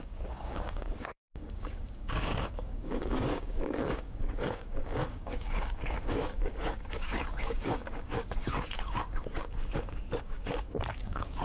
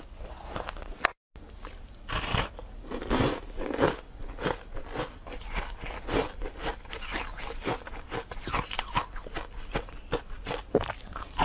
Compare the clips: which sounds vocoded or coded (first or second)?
first